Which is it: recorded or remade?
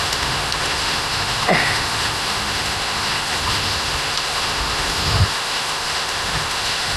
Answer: remade